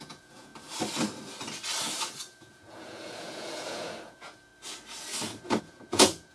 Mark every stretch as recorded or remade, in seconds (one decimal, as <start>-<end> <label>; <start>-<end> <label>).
0.0-0.5 remade; 0.5-2.5 recorded; 2.5-4.5 remade; 4.5-5.6 recorded; 5.6-6.3 remade